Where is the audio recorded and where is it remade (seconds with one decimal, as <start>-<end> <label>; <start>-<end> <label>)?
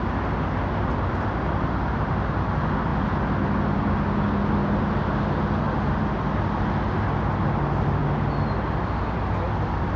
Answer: 0.0-10.0 recorded